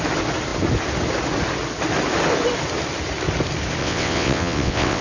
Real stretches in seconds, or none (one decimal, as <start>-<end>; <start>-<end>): 0.0-3.8